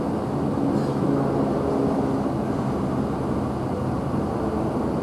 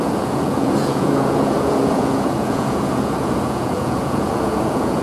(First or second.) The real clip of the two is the first